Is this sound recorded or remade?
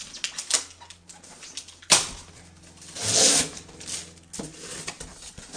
recorded